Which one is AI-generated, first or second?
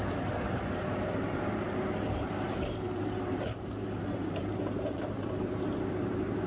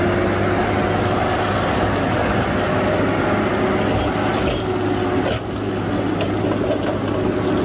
first